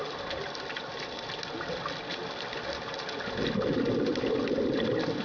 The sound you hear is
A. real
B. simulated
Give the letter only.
A